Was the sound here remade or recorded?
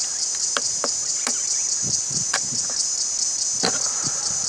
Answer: recorded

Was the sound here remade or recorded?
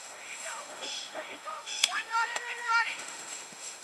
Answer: remade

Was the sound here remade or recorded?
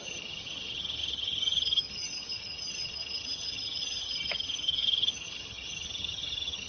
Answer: remade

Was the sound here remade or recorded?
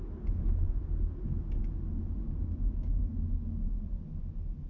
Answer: recorded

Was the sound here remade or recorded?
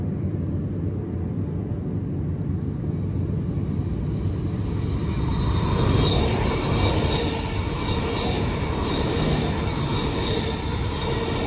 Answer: recorded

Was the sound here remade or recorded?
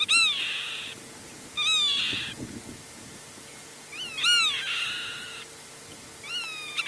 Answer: recorded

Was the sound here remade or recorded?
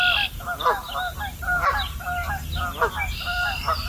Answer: recorded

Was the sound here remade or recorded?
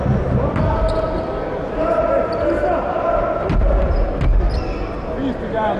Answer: recorded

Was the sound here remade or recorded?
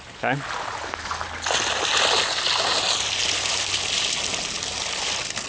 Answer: recorded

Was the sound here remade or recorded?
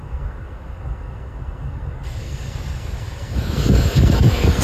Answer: remade